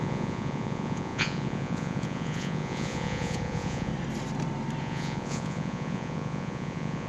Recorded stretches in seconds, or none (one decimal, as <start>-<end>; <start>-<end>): 3.9-4.8